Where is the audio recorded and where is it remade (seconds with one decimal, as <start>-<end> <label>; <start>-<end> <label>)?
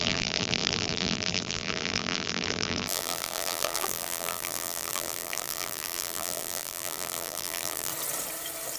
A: 0.0-7.9 remade; 7.9-8.8 recorded